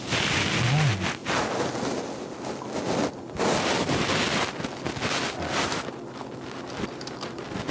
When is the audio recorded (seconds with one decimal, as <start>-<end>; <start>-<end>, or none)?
0.0-7.7